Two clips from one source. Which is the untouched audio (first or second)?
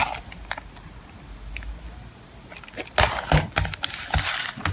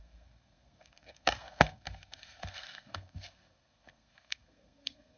first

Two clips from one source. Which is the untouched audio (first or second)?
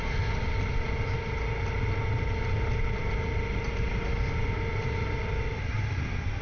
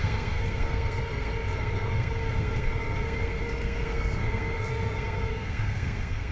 first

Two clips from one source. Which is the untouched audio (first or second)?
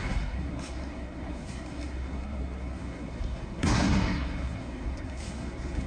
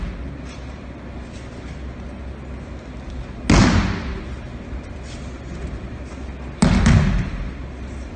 second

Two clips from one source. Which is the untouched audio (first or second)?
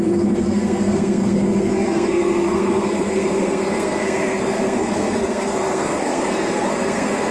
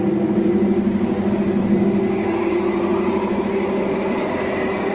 second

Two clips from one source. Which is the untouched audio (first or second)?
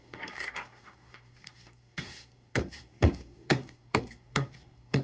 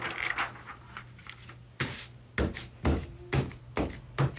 second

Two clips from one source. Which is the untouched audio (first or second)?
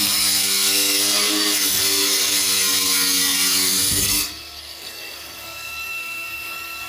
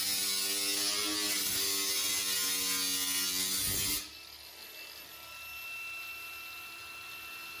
second